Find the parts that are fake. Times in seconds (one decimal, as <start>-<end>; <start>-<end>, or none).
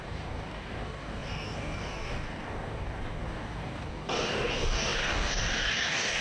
0.0-6.2